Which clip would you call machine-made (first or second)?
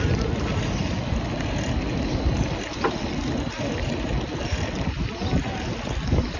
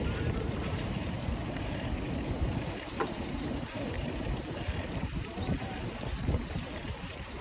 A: second